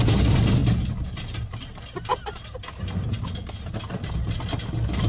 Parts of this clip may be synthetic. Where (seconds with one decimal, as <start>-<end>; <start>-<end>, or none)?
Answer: none

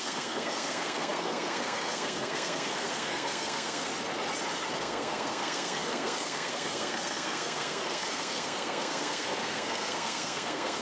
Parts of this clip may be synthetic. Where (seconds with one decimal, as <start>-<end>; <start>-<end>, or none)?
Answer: 0.0-3.9; 4.8-10.8

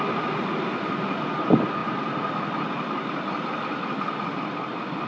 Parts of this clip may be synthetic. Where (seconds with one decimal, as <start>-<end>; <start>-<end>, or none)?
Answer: none

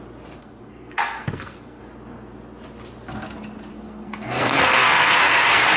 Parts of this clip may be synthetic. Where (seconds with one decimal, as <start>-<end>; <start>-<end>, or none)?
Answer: 0.4-1.8; 3.7-5.8

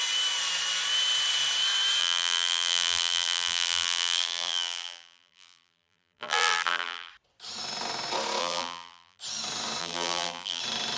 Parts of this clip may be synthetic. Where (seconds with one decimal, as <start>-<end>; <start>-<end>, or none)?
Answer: 2.0-7.1; 8.4-9.2; 9.8-10.6

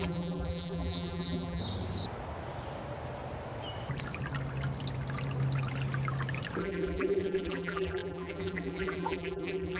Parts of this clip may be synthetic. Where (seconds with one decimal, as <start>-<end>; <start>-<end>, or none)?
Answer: 0.0-1.6; 6.6-9.8

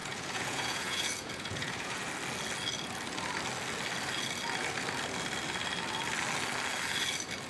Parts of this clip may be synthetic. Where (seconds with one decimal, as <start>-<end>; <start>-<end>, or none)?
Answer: 0.0-2.1